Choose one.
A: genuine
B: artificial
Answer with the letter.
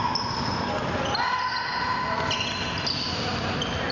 A